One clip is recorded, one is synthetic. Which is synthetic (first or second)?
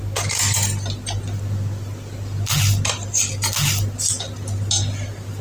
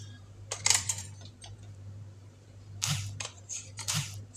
second